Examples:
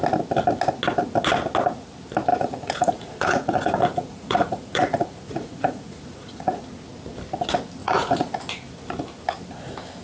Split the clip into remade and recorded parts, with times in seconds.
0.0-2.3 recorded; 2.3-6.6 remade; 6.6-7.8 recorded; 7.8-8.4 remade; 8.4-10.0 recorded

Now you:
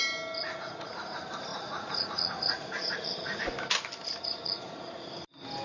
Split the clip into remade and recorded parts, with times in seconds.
0.0-0.4 recorded; 0.4-0.9 remade; 0.9-1.5 recorded; 1.5-3.4 remade; 3.4-4.4 recorded; 4.4-5.1 remade; 5.1-5.6 recorded

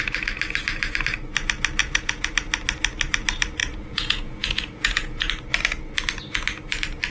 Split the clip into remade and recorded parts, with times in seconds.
0.0-1.8 recorded; 1.8-2.3 remade; 2.3-3.6 recorded; 3.6-5.3 remade; 5.3-7.1 recorded

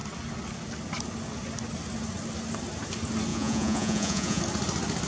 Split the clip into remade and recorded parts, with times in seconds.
0.0-3.3 recorded; 3.3-4.4 remade; 4.4-5.1 recorded